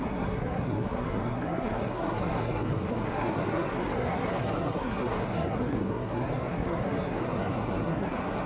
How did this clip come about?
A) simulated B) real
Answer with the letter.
A